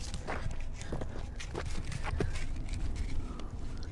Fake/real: real